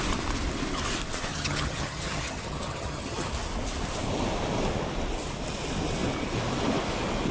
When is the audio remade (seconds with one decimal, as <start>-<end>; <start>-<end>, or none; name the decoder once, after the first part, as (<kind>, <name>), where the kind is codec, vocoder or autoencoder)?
1.3-3.3 (vocoder, HiFi-GAN)